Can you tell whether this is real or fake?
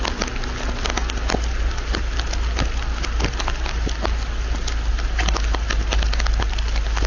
real